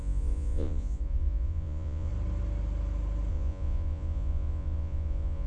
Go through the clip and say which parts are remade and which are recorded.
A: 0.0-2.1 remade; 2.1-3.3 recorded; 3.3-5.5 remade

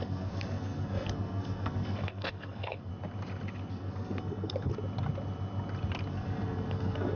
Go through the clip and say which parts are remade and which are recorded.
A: 0.0-2.9 remade; 2.9-3.7 recorded; 3.7-4.7 remade; 4.7-6.1 recorded; 6.1-7.2 remade